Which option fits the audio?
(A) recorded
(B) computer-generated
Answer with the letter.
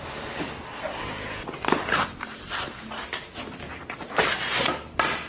A